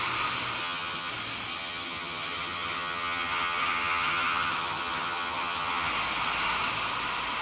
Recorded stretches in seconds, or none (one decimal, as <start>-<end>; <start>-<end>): 0.0-0.6; 1.1-1.5; 5.9-7.4